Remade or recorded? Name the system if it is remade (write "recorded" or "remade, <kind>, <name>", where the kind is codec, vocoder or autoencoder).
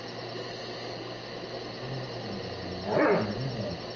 recorded